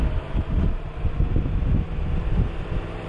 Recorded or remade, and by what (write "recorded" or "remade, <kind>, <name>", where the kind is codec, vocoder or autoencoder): recorded